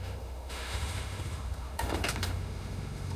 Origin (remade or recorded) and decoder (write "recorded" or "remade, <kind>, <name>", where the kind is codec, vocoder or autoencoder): remade, autoencoder, DAC-VAE